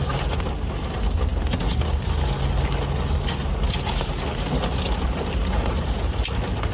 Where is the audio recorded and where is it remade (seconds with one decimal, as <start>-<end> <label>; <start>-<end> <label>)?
0.0-6.7 recorded